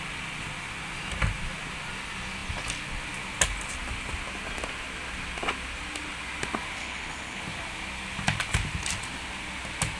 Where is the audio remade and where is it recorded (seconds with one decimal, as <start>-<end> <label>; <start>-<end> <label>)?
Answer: 0.0-6.8 recorded; 6.8-7.4 remade; 7.4-10.0 recorded